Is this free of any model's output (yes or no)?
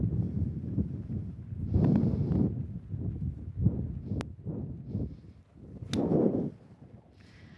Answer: yes